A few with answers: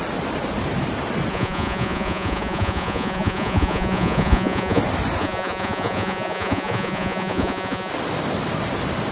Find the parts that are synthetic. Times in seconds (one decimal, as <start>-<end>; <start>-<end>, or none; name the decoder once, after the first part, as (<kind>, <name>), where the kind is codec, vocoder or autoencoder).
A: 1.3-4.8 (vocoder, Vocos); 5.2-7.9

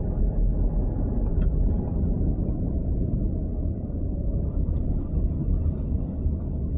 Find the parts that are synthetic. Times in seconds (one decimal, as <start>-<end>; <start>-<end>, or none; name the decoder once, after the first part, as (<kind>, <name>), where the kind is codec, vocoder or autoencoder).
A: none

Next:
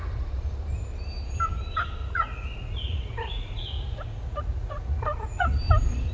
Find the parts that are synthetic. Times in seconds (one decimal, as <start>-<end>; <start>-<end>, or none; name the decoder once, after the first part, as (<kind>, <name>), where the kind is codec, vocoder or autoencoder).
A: 2.0-5.6 (vocoder, Vocos)

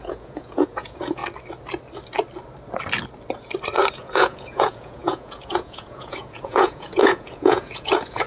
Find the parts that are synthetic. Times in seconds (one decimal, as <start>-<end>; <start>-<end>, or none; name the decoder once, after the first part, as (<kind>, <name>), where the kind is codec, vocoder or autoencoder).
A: 0.0-1.2 (vocoder, Vocos); 3.9-8.3